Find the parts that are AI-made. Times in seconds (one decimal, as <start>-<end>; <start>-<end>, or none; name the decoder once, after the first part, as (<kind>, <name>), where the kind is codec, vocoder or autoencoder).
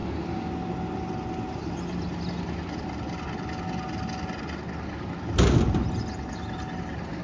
none